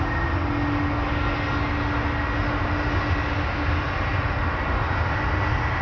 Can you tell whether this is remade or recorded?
recorded